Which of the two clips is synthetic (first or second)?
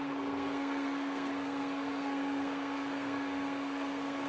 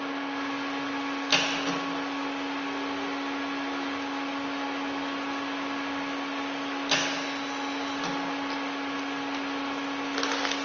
first